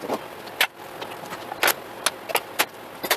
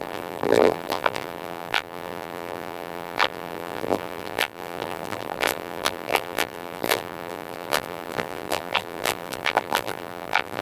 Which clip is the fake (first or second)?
second